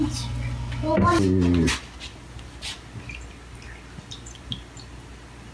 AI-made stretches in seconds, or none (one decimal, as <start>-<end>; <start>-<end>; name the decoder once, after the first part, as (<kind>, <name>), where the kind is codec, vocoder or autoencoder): 1.7-2.2 (vocoder, BigVGAN v2)